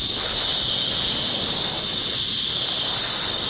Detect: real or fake real